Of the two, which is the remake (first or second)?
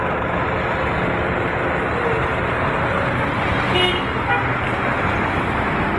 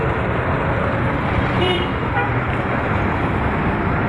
second